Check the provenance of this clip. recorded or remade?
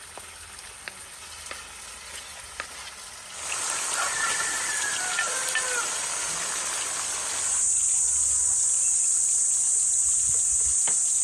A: recorded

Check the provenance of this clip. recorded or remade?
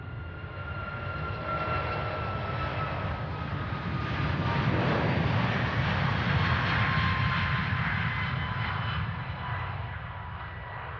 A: recorded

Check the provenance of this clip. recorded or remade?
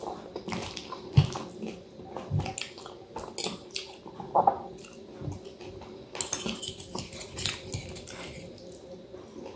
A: recorded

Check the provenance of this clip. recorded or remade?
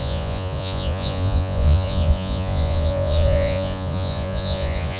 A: remade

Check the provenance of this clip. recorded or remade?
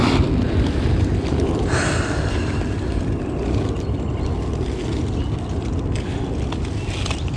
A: recorded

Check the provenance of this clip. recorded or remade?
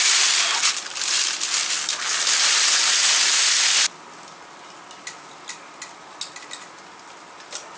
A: recorded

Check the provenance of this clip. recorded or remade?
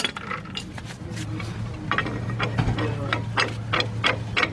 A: recorded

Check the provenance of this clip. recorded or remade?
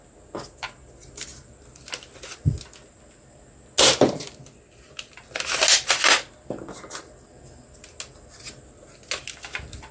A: recorded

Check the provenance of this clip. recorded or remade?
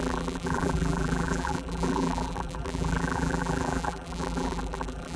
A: remade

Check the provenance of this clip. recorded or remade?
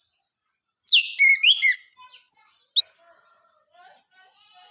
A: recorded